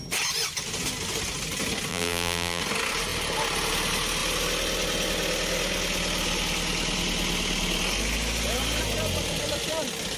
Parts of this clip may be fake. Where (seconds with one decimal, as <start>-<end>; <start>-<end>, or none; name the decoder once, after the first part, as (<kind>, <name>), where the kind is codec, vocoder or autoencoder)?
1.9-2.6 (vocoder, BigVGAN v2)